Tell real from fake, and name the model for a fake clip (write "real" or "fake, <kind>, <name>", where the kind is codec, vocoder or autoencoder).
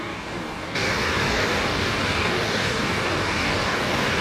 fake, codec, DAC